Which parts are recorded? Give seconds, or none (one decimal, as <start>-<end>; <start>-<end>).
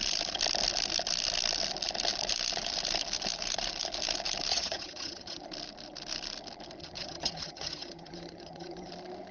0.0-4.5; 5.4-6.8; 8.9-9.3